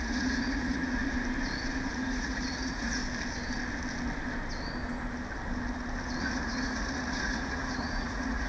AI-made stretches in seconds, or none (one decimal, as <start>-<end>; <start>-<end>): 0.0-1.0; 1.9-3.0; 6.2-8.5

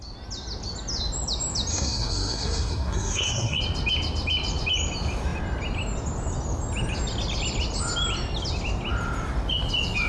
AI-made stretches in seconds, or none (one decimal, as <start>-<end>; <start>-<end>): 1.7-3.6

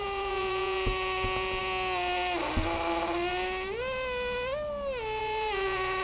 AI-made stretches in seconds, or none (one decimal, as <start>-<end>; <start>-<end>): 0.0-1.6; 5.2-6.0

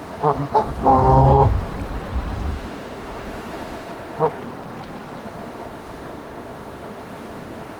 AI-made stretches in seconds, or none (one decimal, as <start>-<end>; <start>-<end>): 0.0-1.7; 2.5-4.4; 5.2-7.8

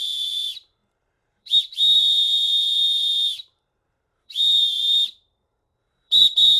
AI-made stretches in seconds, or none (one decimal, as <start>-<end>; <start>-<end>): 0.0-6.6

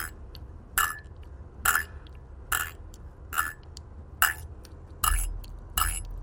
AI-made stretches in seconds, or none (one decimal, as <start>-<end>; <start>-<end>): none

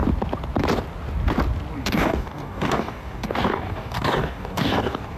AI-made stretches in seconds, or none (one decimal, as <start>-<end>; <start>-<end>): 1.8-5.2

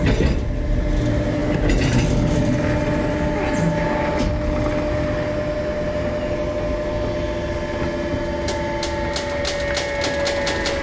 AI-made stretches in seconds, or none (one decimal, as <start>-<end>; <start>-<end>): none